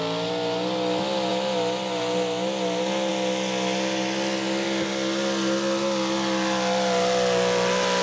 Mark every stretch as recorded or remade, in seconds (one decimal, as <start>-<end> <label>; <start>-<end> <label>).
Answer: 0.0-8.0 recorded